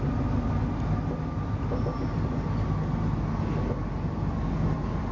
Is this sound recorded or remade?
recorded